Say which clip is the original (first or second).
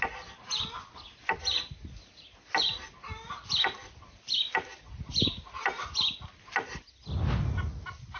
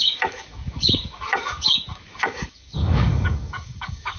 first